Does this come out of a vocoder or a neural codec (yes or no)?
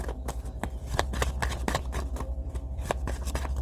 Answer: yes